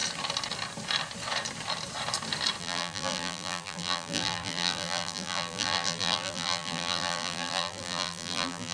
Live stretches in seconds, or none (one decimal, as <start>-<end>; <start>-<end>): 0.0-2.6